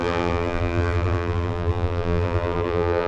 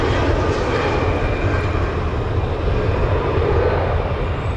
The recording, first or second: second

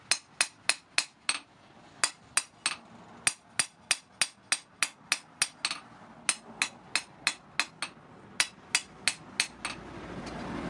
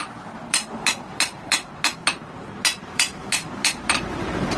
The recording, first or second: first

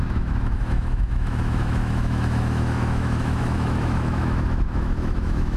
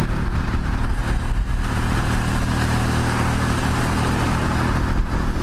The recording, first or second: second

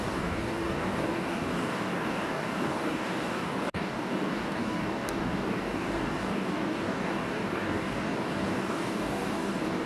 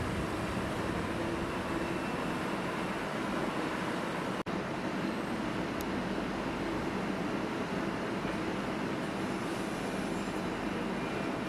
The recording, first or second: second